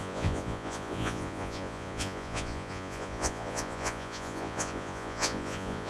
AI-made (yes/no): yes